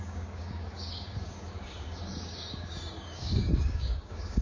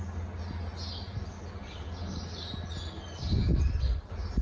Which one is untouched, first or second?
second